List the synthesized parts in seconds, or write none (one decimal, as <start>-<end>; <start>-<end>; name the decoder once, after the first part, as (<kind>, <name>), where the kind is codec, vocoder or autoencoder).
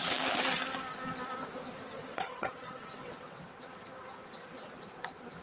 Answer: 2.1-3.7 (vocoder, WaveNeXt)